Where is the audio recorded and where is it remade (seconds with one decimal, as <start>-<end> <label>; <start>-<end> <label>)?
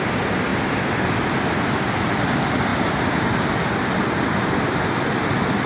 0.0-5.7 recorded